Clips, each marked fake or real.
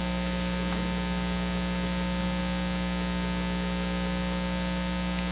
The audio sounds real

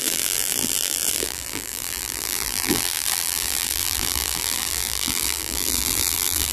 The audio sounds fake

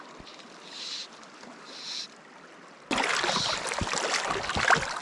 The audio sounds real